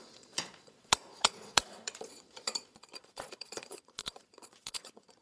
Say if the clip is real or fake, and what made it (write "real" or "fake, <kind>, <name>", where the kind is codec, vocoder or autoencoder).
fake, vocoder, Vocos